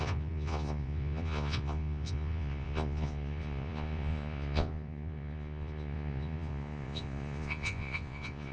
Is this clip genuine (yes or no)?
no